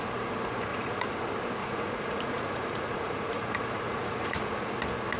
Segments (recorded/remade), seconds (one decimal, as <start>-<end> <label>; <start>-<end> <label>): 0.0-0.7 recorded; 0.7-1.2 remade; 1.2-1.6 recorded; 1.6-4.7 remade; 4.7-5.2 recorded